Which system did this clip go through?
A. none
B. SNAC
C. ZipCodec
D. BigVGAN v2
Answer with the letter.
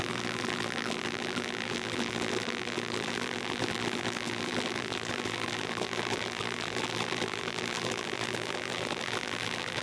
D